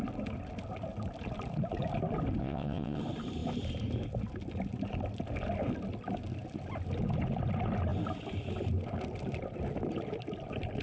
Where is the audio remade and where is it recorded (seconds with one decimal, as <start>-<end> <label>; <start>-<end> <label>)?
0.0-2.4 recorded; 2.4-3.0 remade; 3.0-10.8 recorded